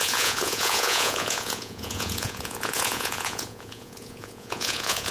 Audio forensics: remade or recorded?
remade